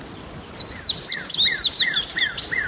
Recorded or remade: recorded